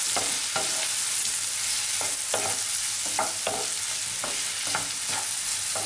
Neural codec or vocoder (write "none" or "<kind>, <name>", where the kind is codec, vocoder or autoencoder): none